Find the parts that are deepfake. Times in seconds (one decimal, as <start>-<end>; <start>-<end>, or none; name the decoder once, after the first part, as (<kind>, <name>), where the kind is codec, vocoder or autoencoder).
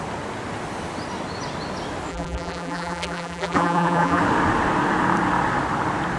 2.1-4.2 (vocoder, BigVGAN v2)